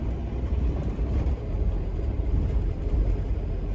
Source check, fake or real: fake